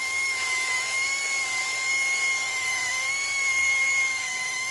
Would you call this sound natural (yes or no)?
no